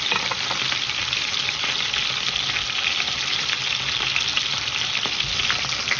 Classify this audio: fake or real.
real